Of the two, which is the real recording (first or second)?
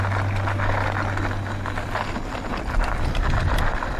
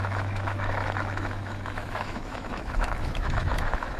first